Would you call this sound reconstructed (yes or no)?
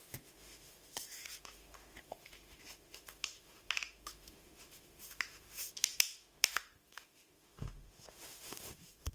yes